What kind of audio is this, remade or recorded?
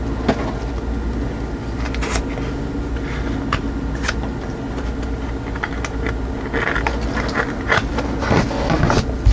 recorded